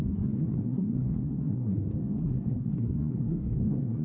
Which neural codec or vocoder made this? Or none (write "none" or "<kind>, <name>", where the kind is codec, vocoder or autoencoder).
codec, SNAC